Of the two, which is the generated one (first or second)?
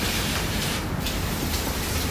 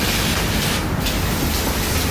first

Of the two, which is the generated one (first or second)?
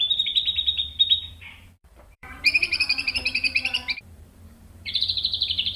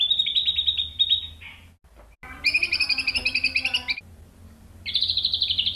first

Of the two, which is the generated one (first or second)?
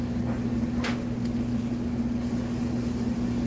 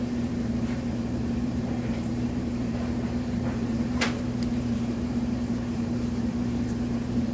second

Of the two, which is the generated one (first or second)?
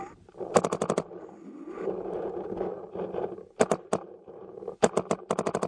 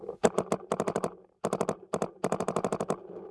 second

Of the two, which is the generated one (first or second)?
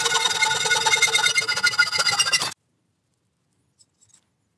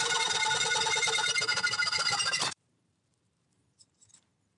second